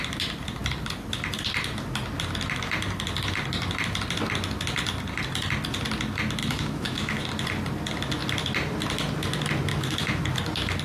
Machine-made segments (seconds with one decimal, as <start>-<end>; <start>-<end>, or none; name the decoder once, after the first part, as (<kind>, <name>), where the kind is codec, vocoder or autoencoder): 6.4-7.2 (autoencoder, DAC-VAE); 9.7-10.2